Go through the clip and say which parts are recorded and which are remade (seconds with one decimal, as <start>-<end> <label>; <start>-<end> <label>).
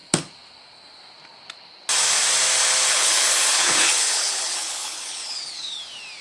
0.0-2.9 recorded; 2.9-5.8 remade; 5.8-6.2 recorded